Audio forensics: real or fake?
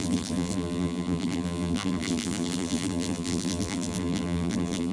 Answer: fake